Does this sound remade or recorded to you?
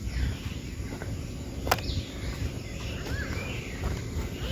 recorded